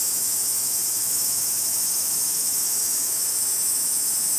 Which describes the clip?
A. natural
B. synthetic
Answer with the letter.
B